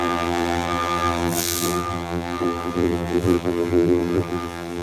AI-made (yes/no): yes